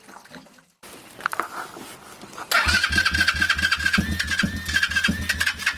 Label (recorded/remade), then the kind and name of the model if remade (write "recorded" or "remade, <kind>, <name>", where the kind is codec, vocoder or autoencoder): recorded